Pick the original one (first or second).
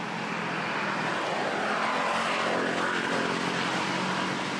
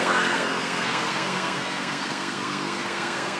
first